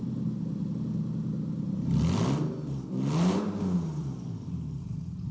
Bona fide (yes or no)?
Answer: yes